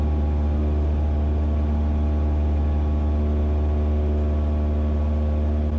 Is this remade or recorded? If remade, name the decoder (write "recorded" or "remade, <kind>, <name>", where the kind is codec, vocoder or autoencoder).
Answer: recorded